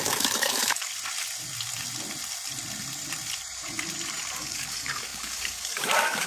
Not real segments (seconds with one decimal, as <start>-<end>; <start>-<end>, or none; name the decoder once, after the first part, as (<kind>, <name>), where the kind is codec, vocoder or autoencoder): 0.0-0.9 (codec, DAC); 4.3-6.3